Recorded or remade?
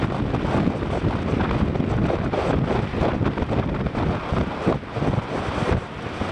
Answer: recorded